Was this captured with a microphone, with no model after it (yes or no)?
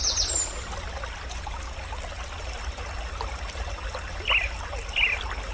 yes